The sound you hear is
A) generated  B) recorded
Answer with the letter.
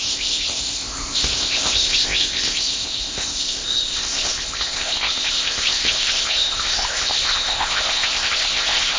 A